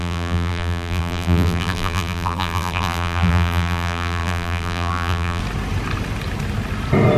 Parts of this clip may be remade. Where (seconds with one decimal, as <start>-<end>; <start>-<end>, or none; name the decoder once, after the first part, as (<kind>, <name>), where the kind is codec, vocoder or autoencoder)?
0.0-5.4 (vocoder, BigVGAN v2)